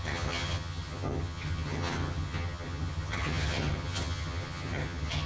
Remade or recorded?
remade